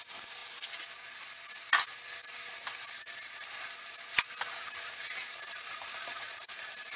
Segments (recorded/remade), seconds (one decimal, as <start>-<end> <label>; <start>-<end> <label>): 0.0-0.4 remade; 0.4-4.6 recorded; 4.6-7.0 remade